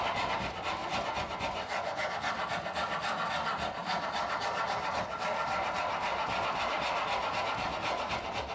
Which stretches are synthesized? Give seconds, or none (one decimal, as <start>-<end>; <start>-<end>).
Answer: 0.8-2.1